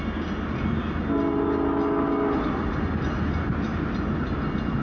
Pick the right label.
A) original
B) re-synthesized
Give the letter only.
A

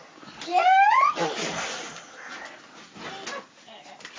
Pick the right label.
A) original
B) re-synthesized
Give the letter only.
A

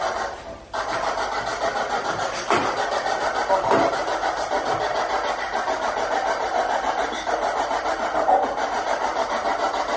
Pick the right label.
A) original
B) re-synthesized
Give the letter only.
A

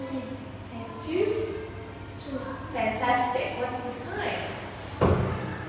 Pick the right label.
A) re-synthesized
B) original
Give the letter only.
B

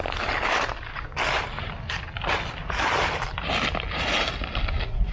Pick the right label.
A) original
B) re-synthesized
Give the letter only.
A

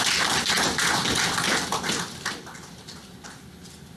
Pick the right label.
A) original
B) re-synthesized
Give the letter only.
A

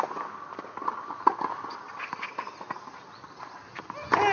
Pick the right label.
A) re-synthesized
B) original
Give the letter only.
B